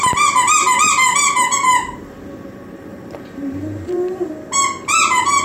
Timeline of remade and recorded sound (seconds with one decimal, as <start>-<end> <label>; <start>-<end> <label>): 0.0-1.1 recorded; 1.1-4.3 remade; 4.3-5.4 recorded